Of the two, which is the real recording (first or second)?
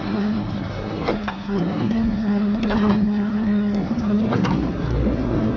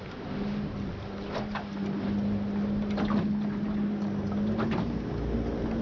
second